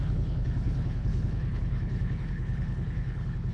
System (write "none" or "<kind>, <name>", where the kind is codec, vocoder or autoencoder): codec, HILCodec